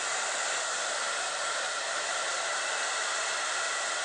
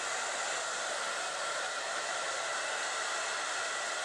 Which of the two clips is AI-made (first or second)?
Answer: first